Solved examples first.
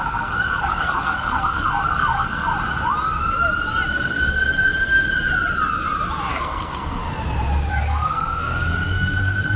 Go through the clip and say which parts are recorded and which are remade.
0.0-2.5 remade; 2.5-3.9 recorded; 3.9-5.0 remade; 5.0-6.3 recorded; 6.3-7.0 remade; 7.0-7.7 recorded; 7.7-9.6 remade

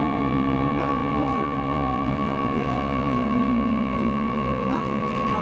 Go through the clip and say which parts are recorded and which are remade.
0.0-5.4 remade